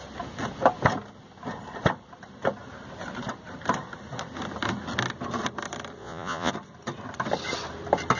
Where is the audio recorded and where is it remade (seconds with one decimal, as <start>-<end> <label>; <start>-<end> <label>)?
0.0-6.0 recorded; 6.0-6.5 remade; 6.5-8.2 recorded